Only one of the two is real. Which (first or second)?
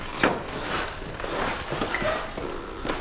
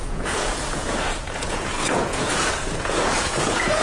first